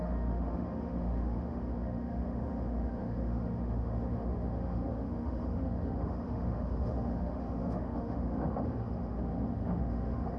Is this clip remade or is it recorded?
remade